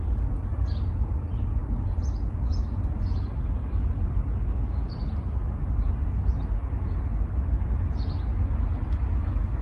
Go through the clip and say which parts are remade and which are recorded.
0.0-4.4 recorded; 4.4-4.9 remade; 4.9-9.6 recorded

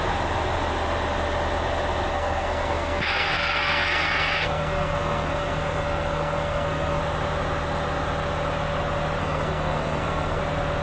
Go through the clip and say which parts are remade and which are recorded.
0.0-2.1 recorded; 2.1-7.0 remade; 7.0-9.2 recorded; 9.2-10.4 remade; 10.4-10.8 recorded